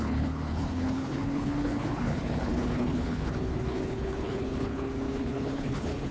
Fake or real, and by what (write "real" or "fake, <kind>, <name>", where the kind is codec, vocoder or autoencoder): fake, codec, HILCodec